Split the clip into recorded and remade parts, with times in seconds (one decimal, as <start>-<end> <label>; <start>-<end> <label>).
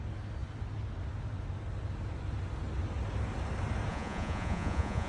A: 0.0-3.9 recorded; 3.9-5.1 remade